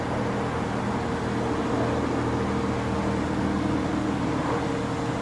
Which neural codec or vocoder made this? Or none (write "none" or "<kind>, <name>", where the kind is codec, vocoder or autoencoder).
none